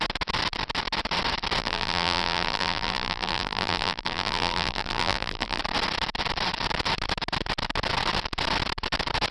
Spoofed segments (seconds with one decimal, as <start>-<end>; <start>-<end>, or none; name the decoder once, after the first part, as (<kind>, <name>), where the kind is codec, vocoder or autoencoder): 1.6-5.6 (vocoder, BigVGAN v2)